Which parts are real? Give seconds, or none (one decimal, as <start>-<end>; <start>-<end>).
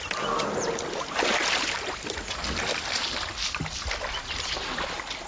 0.0-5.3